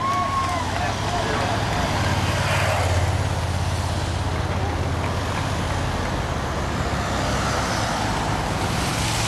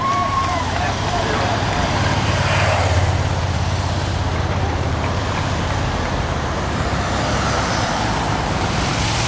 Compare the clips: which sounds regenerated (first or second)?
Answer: second